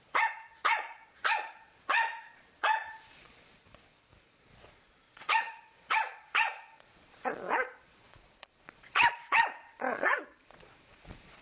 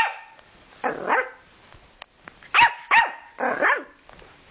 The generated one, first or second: first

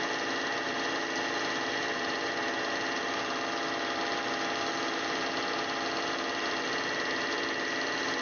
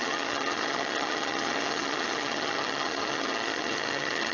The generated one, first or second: second